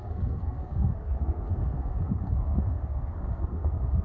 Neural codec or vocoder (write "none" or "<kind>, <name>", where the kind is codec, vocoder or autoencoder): codec, SNAC